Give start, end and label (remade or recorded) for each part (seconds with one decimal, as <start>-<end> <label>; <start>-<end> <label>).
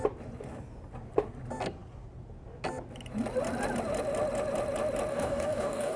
0.0-5.1 recorded; 5.1-6.0 remade